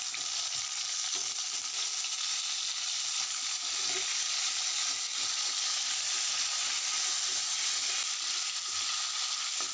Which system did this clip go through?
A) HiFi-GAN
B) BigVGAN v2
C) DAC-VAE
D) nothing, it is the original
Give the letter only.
D